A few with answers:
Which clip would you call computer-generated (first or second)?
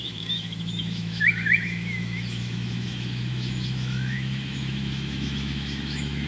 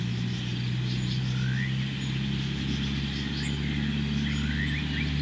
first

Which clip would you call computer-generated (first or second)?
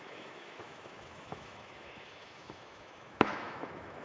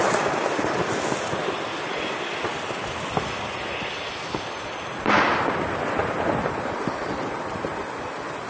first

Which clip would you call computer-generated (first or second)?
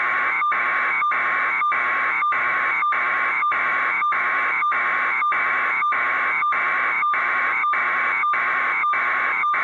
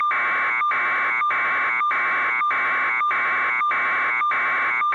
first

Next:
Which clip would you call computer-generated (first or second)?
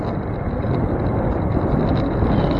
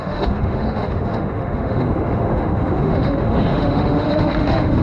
second